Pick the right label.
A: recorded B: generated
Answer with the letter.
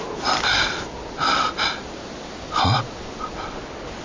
A